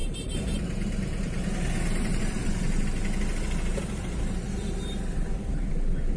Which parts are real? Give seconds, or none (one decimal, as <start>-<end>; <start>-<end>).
2.8-3.7; 5.7-6.2